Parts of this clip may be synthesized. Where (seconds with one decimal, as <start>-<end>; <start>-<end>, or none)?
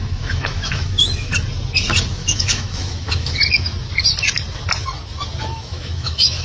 0.0-1.3; 2.1-3.4; 5.4-6.4